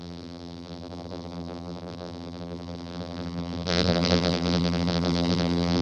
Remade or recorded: remade